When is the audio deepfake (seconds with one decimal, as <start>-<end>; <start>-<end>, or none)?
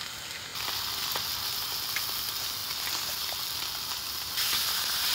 none